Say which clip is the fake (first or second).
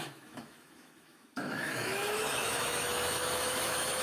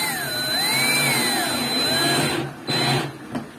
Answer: first